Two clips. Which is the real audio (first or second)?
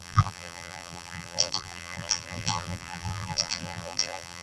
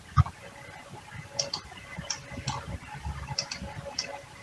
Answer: second